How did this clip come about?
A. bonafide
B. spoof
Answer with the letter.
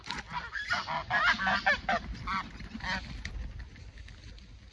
A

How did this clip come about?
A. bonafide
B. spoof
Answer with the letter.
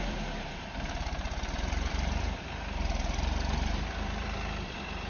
B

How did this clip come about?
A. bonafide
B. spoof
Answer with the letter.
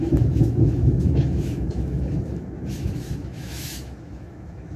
B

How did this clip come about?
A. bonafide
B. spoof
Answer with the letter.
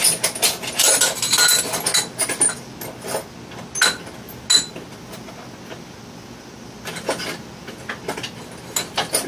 A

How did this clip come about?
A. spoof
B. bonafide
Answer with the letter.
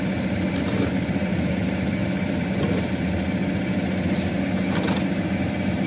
B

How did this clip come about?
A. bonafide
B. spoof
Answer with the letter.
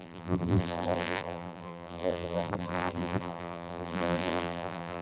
B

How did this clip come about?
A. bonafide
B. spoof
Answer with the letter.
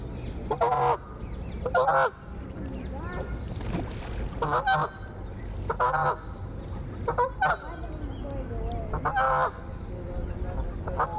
A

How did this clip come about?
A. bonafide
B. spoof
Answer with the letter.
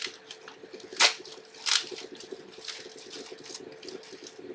A